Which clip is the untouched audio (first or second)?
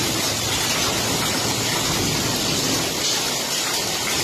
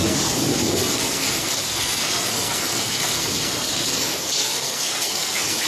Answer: first